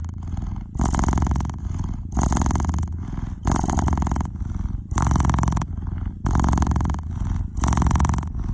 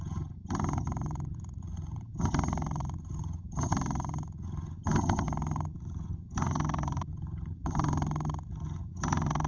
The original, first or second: first